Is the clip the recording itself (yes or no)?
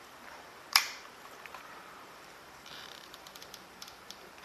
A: no